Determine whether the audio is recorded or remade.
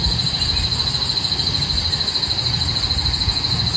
recorded